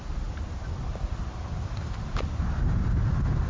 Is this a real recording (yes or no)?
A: yes